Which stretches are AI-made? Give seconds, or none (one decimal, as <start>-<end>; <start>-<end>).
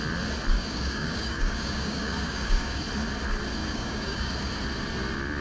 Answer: 0.5-2.8; 3.6-4.3